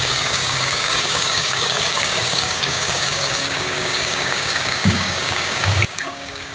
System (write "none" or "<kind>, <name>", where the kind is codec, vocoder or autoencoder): codec, DAC